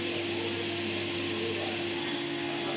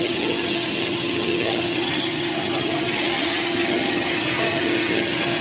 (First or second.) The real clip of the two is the first